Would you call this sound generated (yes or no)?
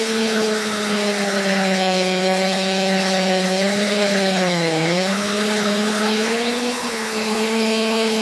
yes